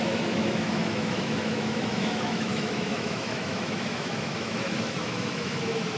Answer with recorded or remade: remade